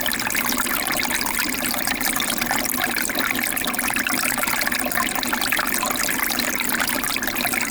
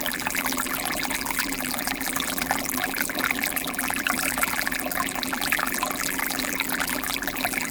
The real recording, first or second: first